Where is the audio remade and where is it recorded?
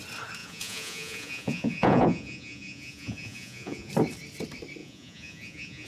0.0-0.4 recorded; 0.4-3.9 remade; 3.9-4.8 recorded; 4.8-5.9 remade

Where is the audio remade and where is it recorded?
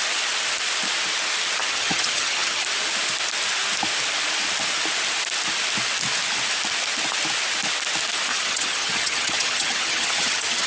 0.0-1.6 recorded; 1.6-2.6 remade; 2.6-8.3 recorded; 8.3-10.7 remade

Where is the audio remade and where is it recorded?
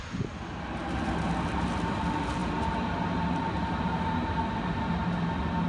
0.0-5.7 recorded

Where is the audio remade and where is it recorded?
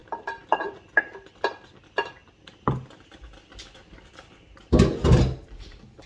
0.0-6.1 recorded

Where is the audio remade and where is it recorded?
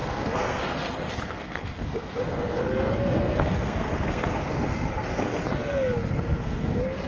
0.0-5.3 remade; 5.3-6.1 recorded; 6.1-7.1 remade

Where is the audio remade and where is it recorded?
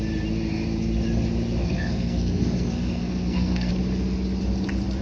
0.0-1.6 recorded; 1.6-3.7 remade; 3.7-5.0 recorded